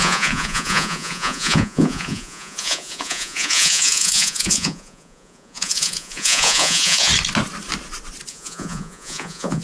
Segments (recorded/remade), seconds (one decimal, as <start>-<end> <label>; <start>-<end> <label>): 0.0-7.1 remade; 7.1-8.3 recorded; 8.3-9.6 remade

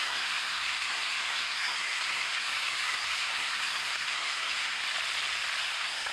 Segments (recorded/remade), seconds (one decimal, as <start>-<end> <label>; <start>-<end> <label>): 0.0-4.8 remade; 4.8-5.6 recorded; 5.6-6.1 remade